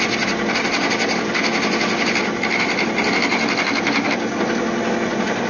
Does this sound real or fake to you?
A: real